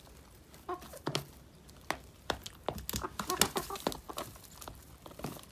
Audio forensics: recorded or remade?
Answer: recorded